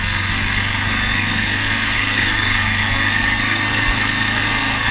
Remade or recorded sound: remade